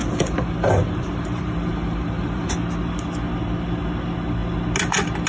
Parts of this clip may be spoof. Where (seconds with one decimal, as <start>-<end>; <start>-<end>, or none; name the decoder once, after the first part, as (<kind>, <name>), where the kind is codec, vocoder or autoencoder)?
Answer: 0.0-2.5 (vocoder, BigVGAN v2)